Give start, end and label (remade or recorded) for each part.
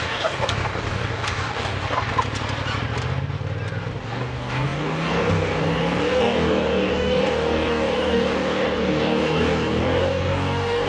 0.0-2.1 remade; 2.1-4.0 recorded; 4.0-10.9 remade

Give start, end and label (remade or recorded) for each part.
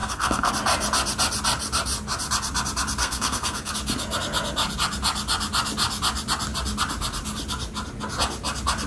0.0-0.5 remade; 0.5-3.0 recorded; 3.0-3.7 remade; 3.7-8.9 recorded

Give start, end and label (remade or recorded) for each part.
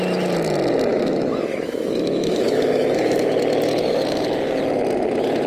0.0-0.9 recorded; 0.9-3.3 remade; 3.3-5.5 recorded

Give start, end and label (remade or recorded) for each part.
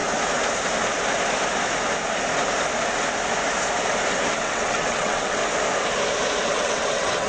0.0-4.4 recorded; 4.4-5.4 remade; 5.4-6.5 recorded; 6.5-7.3 remade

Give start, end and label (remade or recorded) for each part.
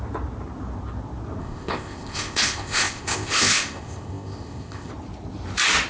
0.0-1.4 recorded; 1.4-4.9 remade; 4.9-5.9 recorded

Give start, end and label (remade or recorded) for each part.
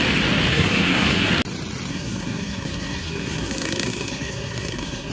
0.0-0.5 recorded; 0.5-1.3 remade; 1.3-1.9 recorded; 1.9-5.1 remade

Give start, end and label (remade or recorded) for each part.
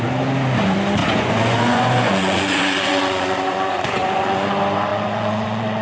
0.0-1.0 recorded; 1.0-4.5 remade; 4.5-4.9 recorded; 4.9-5.8 remade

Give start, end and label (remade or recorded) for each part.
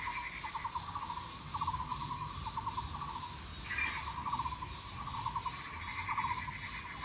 0.0-7.0 recorded